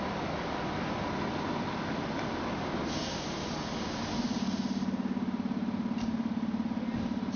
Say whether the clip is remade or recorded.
recorded